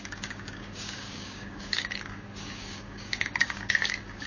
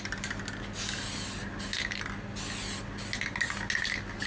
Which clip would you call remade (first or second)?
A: first